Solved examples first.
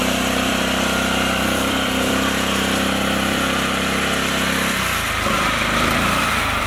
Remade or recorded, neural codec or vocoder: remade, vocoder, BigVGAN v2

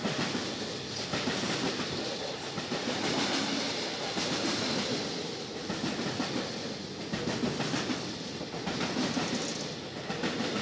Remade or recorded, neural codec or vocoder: recorded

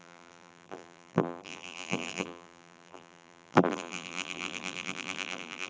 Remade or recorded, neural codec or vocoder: remade, vocoder, BigVGAN v2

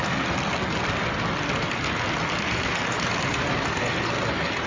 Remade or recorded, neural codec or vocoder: recorded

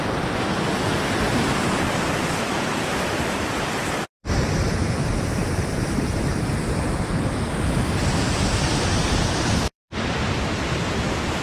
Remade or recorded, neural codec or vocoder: remade, vocoder, BigVGAN v2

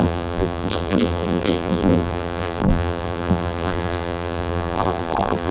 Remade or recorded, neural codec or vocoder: remade, vocoder, BigVGAN v2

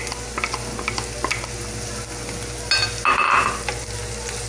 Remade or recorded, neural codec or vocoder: recorded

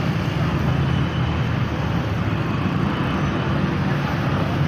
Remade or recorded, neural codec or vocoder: recorded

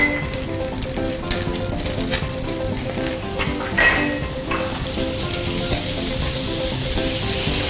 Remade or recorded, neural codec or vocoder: recorded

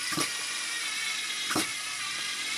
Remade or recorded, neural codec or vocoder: remade, vocoder, BigVGAN v2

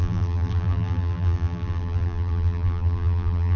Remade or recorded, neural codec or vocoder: remade, vocoder, BigVGAN v2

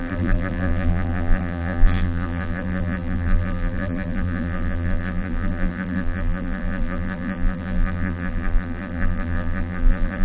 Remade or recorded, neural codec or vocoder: remade, vocoder, BigVGAN v2